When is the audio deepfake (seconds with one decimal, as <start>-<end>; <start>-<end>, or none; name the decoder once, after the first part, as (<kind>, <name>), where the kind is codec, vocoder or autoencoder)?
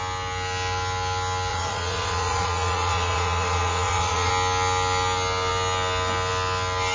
1.5-4.3 (vocoder, Vocos)